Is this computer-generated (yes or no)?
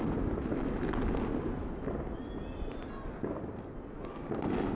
no